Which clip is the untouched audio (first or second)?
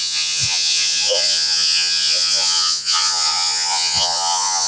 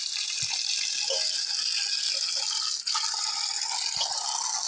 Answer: second